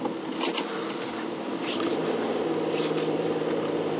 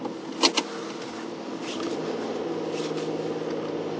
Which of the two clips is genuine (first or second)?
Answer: second